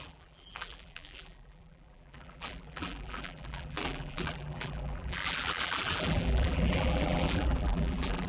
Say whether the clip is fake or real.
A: fake